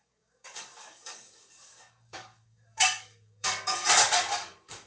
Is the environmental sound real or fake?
fake